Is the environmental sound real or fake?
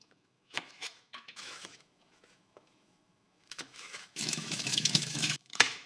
fake